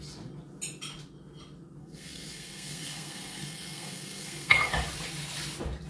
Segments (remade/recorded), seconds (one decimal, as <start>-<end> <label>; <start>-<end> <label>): 0.0-1.8 recorded; 1.8-4.7 remade; 4.7-5.9 recorded